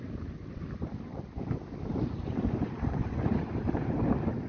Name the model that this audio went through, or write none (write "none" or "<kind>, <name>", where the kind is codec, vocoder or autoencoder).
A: none